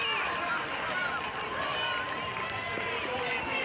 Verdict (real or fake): real